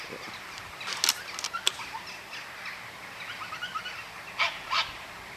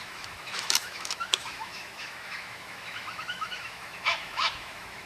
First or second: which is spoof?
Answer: second